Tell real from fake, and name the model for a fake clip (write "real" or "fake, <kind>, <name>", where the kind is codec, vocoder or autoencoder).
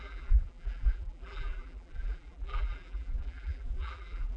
fake, vocoder, BigVGAN v2